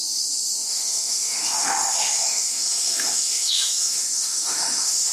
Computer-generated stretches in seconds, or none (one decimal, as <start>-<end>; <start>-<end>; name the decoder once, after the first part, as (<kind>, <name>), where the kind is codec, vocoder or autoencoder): 0.0-5.1 (autoencoder, DAC-VAE)